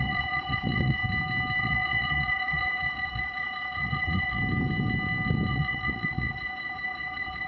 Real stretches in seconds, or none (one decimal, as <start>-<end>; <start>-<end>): 1.0-1.6; 4.4-5.5